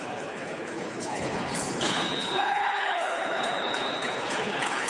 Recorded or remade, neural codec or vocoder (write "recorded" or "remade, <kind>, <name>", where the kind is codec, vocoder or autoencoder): remade, codec, HILCodec